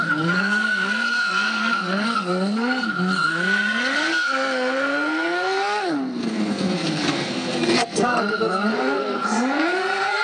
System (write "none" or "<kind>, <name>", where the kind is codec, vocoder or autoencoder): codec, SNAC